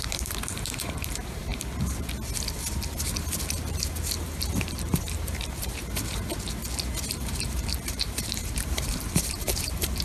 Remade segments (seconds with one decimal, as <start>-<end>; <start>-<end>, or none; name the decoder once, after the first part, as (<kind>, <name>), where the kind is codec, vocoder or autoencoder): 0.0-1.5 (vocoder, BigVGAN v2); 4.2-6.3; 7.1-10.0